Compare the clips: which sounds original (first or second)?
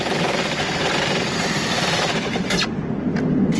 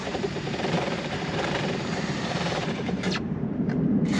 first